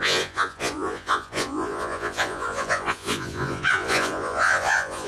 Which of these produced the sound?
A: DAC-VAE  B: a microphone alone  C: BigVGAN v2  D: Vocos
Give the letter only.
D